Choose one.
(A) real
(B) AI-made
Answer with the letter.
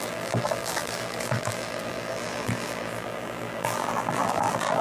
B